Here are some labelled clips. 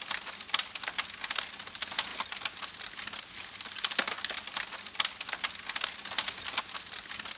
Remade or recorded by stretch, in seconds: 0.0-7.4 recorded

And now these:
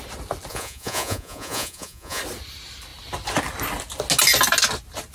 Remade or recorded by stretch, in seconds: 0.0-0.5 recorded; 0.5-2.2 remade; 2.2-5.1 recorded

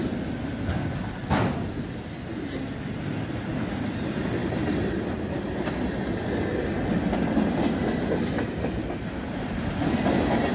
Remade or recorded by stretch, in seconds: 0.0-10.5 recorded

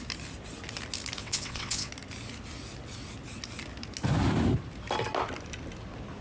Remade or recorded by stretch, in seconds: 0.0-1.2 recorded; 1.2-1.9 remade; 1.9-6.2 recorded

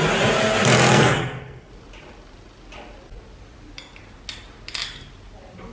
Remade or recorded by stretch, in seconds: 0.0-0.9 recorded; 0.9-1.7 remade; 1.7-5.7 recorded